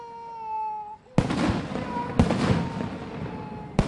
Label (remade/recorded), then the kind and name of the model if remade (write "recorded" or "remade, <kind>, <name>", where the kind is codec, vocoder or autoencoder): recorded